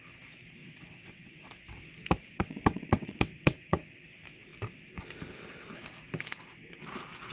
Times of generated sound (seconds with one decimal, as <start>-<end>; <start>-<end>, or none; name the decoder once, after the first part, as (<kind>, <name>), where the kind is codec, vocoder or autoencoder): 0.6-1.5 (vocoder, WaveNeXt); 2.3-3.8